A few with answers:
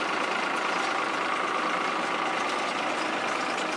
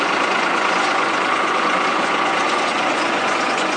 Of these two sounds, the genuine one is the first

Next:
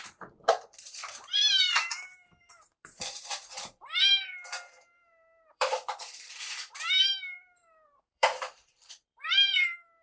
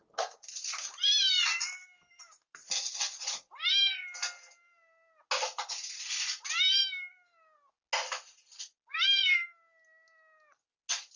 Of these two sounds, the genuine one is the second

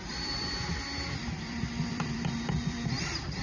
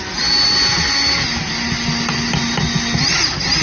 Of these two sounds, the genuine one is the second